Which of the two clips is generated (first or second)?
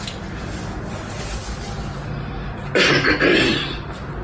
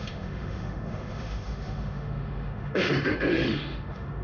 second